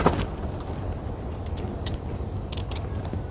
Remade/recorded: recorded